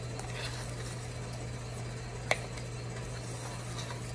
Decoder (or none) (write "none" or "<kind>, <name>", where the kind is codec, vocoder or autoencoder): none